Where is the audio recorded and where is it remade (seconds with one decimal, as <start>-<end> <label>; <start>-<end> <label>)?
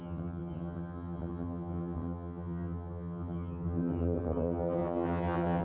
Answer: 0.0-5.6 remade